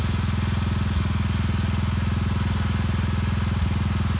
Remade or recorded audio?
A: recorded